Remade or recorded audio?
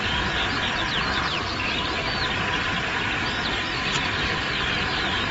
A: recorded